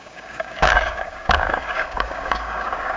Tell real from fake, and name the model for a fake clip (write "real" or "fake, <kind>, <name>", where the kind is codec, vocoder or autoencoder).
fake, codec, DAC